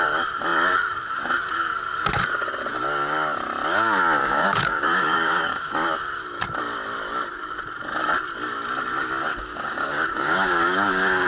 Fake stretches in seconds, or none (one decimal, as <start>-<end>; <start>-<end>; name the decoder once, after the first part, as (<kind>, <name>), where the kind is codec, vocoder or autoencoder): 4.2-5.7 (codec, DAC); 9.3-11.3